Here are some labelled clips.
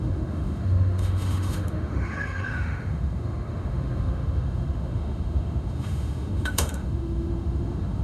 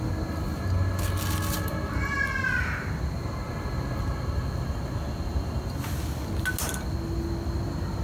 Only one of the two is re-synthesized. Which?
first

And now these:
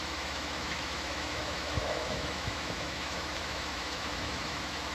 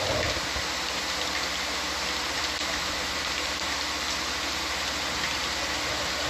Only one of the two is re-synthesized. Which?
first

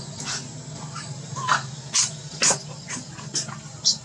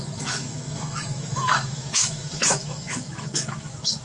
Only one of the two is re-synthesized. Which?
second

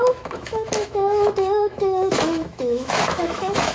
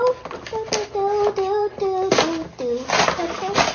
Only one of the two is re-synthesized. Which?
first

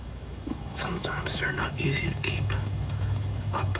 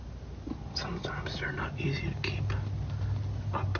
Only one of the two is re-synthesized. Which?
first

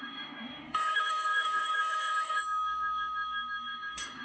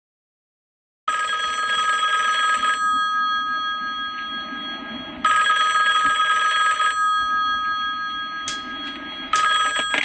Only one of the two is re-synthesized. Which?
first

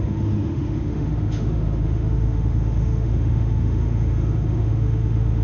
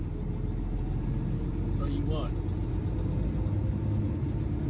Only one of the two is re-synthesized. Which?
first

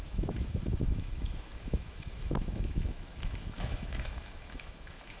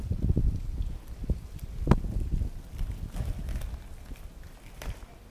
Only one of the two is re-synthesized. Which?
first